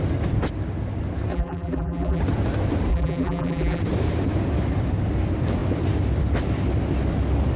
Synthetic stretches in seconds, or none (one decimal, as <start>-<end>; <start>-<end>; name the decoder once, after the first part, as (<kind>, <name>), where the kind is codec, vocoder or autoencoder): 1.3-2.2 (vocoder, BigVGAN v2); 2.9-3.8